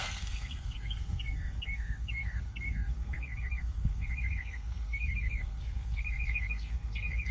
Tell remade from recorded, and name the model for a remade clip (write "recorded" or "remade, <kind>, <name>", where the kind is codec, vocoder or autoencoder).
remade, codec, SNAC